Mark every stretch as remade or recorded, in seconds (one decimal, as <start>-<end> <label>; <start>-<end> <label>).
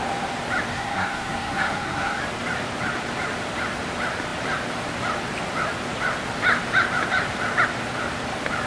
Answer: 0.0-0.7 recorded; 0.7-2.2 remade; 2.2-8.7 recorded